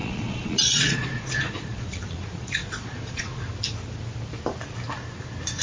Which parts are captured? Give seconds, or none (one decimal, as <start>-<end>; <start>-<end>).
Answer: 3.4-5.6